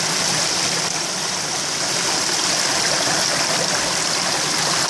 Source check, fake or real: real